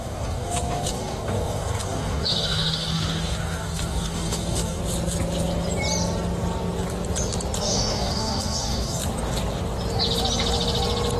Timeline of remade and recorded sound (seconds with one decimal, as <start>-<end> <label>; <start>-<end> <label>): 0.0-4.8 remade; 4.8-7.6 recorded; 7.6-9.0 remade; 9.0-11.2 recorded